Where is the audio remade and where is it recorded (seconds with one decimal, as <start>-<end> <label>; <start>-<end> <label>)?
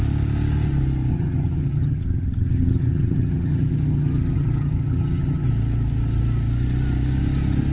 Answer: 0.0-1.1 recorded; 1.1-5.5 remade; 5.5-7.7 recorded